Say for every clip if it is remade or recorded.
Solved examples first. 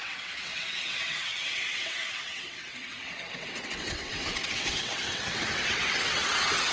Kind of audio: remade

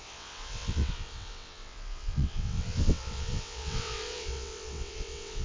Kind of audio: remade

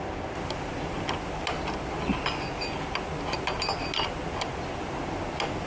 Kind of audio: recorded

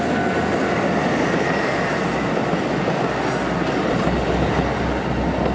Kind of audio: recorded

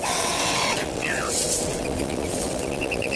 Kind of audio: remade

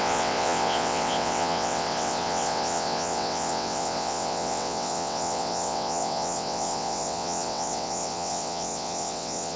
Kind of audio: remade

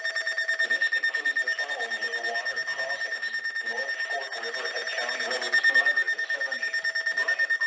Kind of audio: recorded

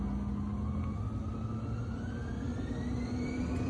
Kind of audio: recorded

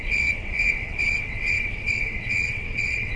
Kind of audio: remade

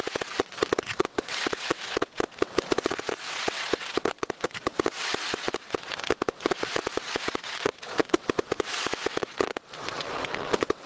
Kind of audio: remade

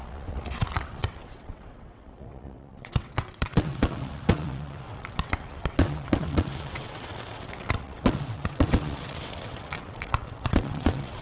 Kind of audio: remade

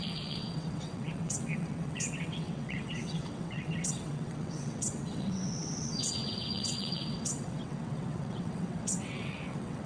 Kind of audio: remade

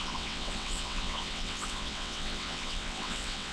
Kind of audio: remade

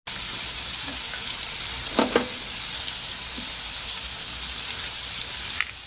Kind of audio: recorded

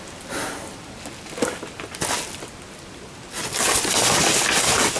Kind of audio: recorded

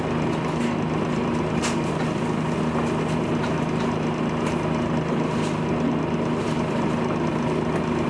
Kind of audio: recorded